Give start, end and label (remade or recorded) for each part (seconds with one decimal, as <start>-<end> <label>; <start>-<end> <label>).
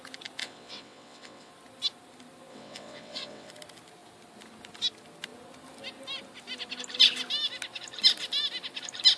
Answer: 0.0-0.4 recorded; 0.4-1.5 remade; 1.5-2.5 recorded; 2.5-3.5 remade; 3.5-9.2 recorded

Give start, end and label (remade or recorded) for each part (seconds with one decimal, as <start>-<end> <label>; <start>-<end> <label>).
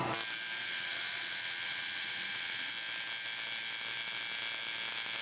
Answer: 0.0-0.6 recorded; 0.6-2.7 remade; 2.7-5.2 recorded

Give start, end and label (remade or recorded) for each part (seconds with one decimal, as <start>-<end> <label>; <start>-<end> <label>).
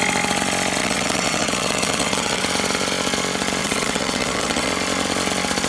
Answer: 0.0-0.8 recorded; 0.8-2.4 remade; 2.4-3.6 recorded; 3.6-4.7 remade; 4.7-5.7 recorded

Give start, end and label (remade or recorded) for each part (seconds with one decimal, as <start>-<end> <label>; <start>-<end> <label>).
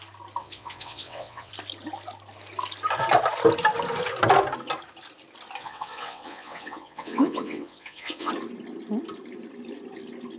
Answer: 0.0-0.4 recorded; 0.4-1.5 remade; 1.5-5.6 recorded; 5.6-8.3 remade; 8.3-10.4 recorded